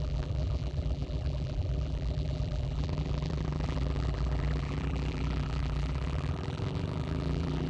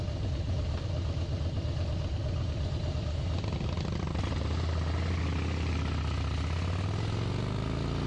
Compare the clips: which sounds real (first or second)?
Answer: second